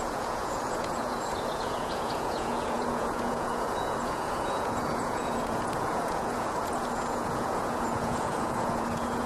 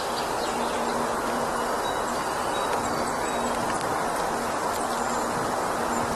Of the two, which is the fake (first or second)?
first